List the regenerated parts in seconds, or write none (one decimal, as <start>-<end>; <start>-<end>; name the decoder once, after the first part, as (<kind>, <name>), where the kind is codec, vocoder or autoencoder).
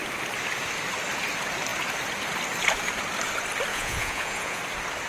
3.7-4.6 (vocoder, Vocos)